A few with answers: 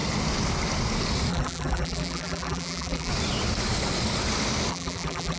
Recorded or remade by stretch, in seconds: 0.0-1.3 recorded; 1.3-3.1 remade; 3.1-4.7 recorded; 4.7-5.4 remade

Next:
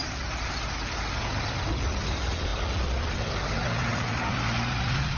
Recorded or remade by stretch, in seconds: 0.0-2.5 recorded; 2.5-3.3 remade; 3.3-5.2 recorded

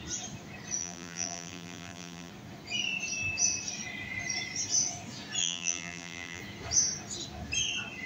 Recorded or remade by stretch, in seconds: 0.0-0.8 recorded; 0.8-2.3 remade; 2.3-5.4 recorded; 5.4-6.4 remade; 6.4-8.1 recorded

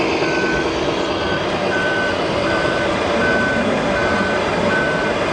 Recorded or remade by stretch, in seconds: 0.0-5.3 recorded

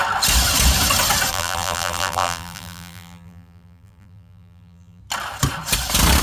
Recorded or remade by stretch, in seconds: 0.0-1.3 recorded; 1.3-5.0 remade; 5.0-6.2 recorded